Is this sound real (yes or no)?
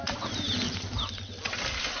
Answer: yes